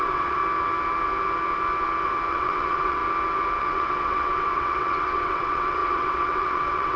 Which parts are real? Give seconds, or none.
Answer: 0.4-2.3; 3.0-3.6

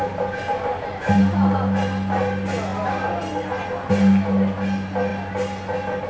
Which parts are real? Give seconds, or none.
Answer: 0.0-6.1

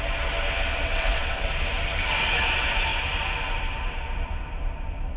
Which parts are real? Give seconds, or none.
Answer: 0.0-0.7; 1.5-5.2